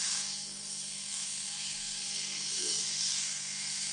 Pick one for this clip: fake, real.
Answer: fake